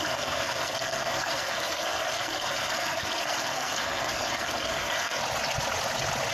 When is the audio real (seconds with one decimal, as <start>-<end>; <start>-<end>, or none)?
5.2-6.3